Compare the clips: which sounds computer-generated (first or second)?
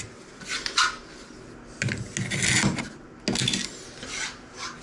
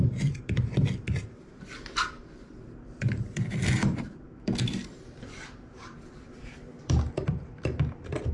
second